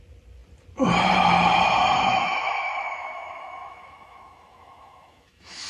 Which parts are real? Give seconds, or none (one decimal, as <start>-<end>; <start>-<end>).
0.0-2.1